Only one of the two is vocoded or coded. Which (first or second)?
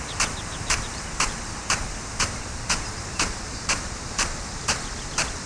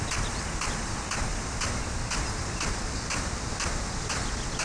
first